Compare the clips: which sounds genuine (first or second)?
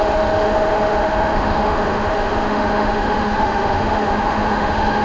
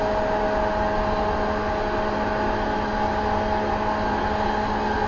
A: second